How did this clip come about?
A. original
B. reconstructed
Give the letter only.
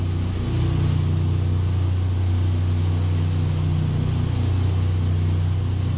A